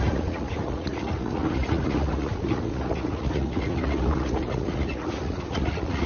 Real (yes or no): no